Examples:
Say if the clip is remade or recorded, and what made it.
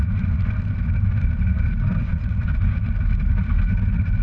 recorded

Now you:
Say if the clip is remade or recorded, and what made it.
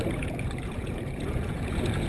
remade, vocoder, Vocos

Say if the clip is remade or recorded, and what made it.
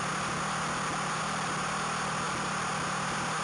recorded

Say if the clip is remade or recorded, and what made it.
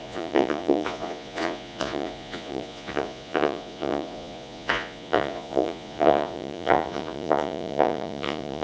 remade, vocoder, Vocos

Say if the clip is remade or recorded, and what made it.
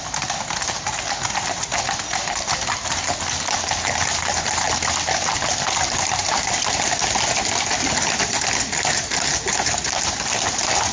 recorded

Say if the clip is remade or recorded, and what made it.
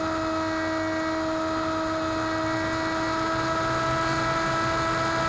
recorded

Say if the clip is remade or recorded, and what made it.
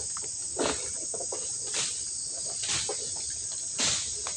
recorded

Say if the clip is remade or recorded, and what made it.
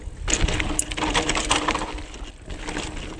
recorded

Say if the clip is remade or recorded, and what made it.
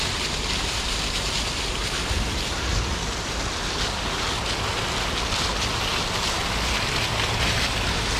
recorded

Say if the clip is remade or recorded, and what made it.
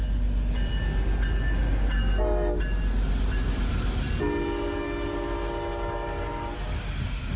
recorded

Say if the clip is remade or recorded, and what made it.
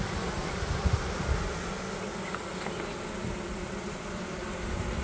recorded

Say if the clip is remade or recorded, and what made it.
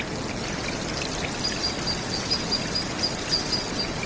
recorded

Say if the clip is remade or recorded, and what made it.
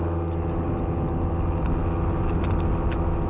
recorded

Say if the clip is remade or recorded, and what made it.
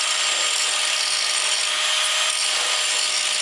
recorded